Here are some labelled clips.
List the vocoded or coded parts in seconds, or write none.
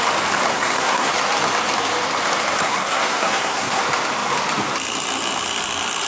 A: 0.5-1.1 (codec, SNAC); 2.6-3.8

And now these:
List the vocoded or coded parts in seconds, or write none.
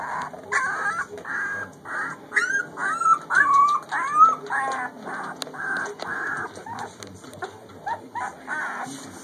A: none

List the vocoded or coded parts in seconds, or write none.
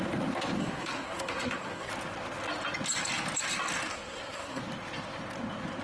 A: 0.6-1.9 (codec, SNAC); 3.9-4.6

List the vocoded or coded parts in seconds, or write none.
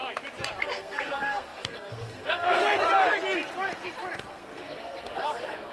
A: 0.6-2.6 (codec, SNAC); 4.3-5.7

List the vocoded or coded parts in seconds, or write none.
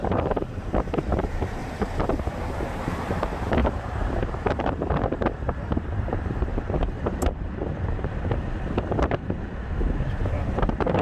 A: 0.0-6.5 (vocoder, BigVGAN v2); 10.1-11.0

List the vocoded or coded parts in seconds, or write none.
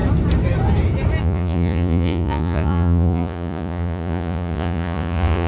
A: 1.2-5.5 (vocoder, Vocos)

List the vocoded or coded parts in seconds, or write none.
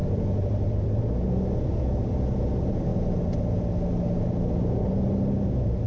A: 0.0-1.0 (vocoder, BigVGAN v2)